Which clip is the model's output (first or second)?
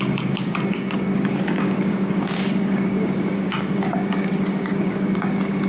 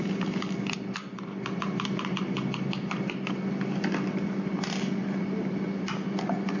first